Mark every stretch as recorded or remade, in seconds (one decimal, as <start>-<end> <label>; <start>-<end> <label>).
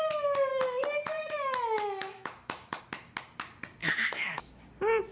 0.0-0.5 recorded; 0.5-2.8 remade; 2.8-3.8 recorded; 3.8-4.6 remade; 4.6-5.1 recorded